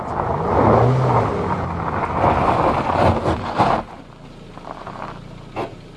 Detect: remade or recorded recorded